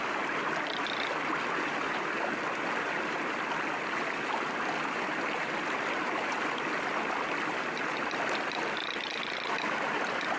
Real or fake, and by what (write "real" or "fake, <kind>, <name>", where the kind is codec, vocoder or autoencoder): real